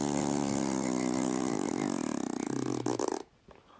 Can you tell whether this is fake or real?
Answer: real